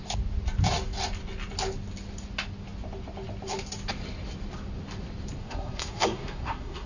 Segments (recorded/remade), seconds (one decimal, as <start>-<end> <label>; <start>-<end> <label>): 0.0-5.4 recorded; 5.4-6.9 remade